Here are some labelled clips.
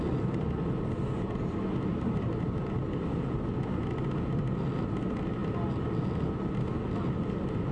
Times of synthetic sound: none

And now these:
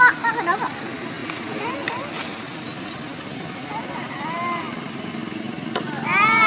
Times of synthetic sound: none

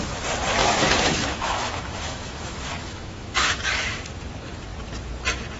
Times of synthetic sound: 0.6-4.0

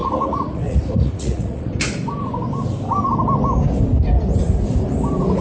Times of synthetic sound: 0.0-1.7